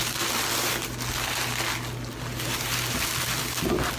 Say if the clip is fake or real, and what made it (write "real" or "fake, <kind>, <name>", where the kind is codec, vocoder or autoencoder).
real